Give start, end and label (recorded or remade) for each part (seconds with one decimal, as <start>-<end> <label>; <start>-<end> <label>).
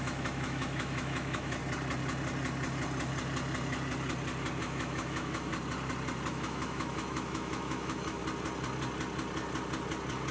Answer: 0.0-1.6 remade; 1.6-4.6 recorded; 4.6-5.5 remade; 5.5-6.3 recorded; 6.3-8.2 remade; 8.2-10.3 recorded